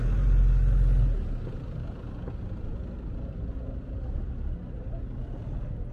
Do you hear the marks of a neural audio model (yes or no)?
no